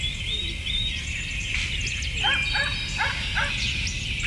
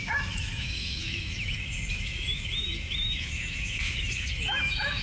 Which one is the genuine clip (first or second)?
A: first